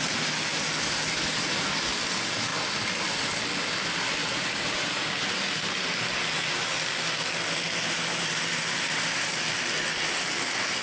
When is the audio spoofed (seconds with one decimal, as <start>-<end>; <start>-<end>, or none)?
4.2-5.7